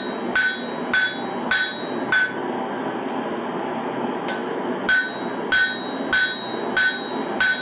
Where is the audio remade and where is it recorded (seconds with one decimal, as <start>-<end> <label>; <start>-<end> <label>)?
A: 0.0-7.6 recorded